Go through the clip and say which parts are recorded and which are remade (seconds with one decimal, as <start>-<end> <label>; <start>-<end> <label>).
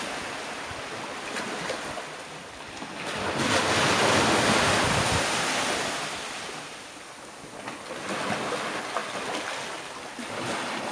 0.0-10.9 recorded